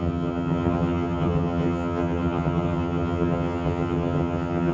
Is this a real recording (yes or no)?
no